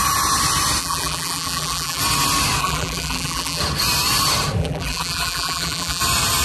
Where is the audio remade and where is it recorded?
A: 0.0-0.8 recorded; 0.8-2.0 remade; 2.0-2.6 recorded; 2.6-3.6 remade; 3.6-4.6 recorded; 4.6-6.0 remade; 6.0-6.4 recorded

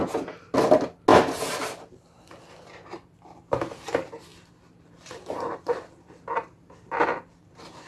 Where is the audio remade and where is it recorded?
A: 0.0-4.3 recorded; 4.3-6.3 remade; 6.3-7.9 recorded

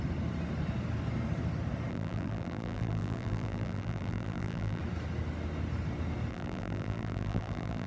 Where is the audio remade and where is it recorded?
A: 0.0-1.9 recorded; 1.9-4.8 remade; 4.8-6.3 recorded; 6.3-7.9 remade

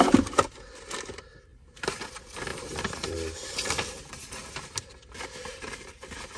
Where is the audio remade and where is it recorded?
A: 0.0-1.5 recorded; 1.5-2.0 remade; 2.0-2.5 recorded; 2.5-6.4 remade